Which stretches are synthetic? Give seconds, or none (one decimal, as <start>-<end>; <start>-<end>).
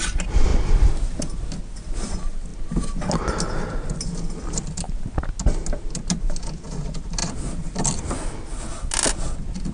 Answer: none